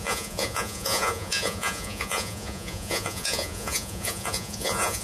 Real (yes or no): no